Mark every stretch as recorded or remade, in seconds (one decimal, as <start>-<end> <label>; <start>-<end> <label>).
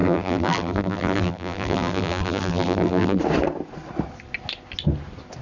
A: 0.0-3.2 remade; 3.2-5.4 recorded